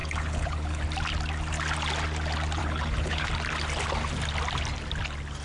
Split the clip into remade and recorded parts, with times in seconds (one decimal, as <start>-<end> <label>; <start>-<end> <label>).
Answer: 0.0-0.8 remade; 0.8-2.6 recorded; 2.6-3.3 remade; 3.3-5.4 recorded

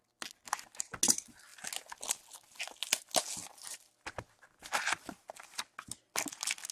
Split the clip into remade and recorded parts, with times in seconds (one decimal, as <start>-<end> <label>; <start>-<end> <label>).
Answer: 0.0-6.7 recorded

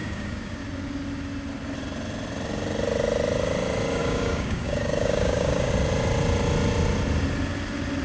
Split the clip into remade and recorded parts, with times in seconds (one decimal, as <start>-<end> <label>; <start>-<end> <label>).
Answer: 0.0-0.6 remade; 0.6-4.0 recorded; 4.0-5.7 remade; 5.7-8.0 recorded

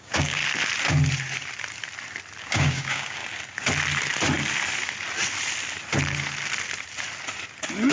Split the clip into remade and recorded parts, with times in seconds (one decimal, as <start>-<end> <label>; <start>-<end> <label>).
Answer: 0.0-0.4 remade; 0.4-2.4 recorded; 2.4-3.2 remade; 3.2-7.9 recorded